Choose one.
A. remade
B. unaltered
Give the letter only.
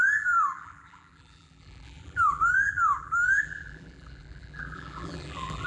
A